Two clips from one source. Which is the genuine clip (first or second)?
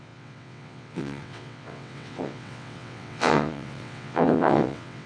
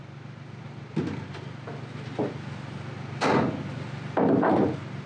second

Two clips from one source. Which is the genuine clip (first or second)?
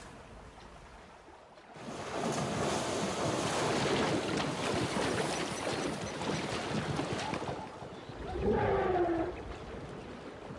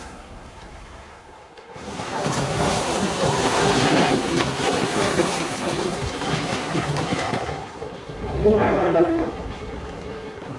first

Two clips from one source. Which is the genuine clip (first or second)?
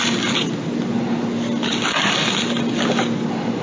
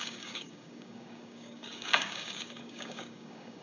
first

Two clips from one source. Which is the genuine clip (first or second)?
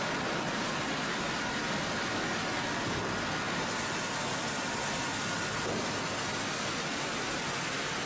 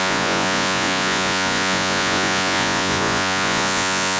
first